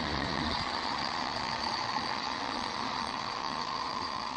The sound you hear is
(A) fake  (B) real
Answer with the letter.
A